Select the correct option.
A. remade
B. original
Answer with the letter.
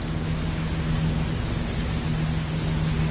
B